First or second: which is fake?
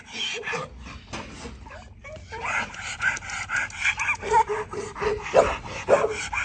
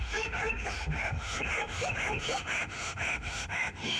second